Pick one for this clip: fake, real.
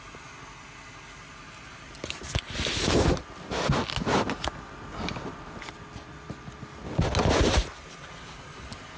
real